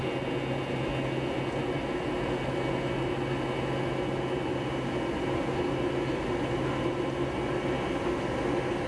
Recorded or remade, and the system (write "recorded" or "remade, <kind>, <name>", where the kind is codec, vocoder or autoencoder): recorded